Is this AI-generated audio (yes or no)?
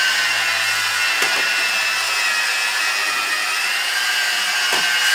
no